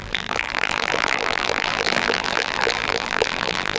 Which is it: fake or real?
fake